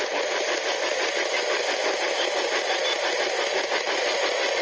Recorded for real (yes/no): yes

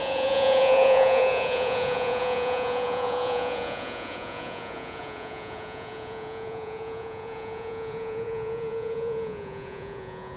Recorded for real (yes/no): no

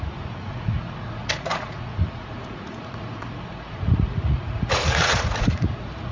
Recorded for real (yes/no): no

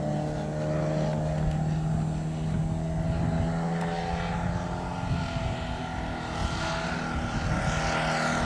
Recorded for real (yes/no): yes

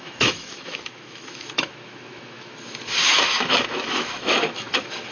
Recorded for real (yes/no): no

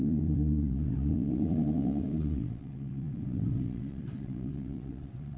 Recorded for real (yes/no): no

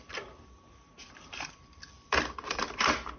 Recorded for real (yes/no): no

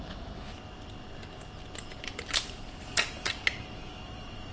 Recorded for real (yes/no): yes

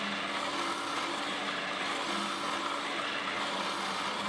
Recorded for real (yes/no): yes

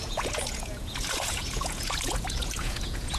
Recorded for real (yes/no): no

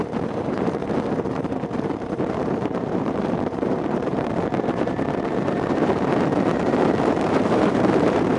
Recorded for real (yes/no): no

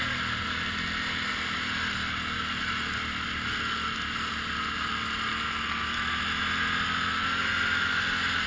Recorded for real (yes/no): yes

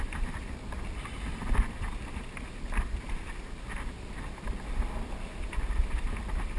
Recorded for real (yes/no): yes